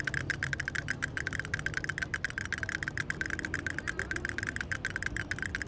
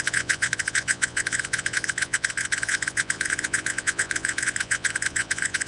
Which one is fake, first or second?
second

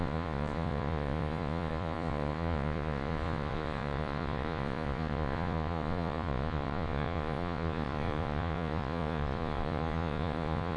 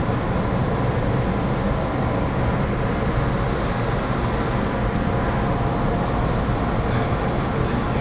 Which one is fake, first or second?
first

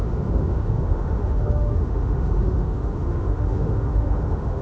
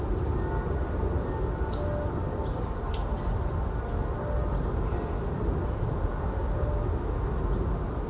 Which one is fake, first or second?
first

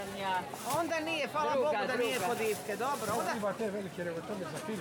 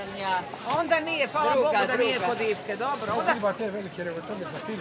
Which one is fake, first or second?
second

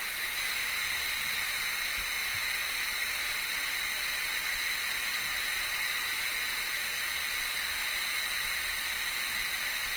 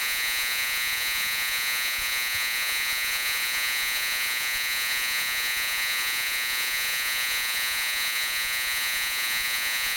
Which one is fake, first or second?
second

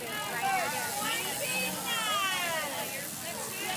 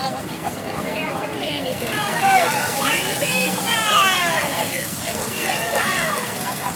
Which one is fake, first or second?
second